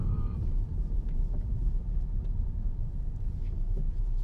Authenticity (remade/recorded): remade